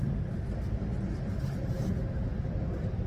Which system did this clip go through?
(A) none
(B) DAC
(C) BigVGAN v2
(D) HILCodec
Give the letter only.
A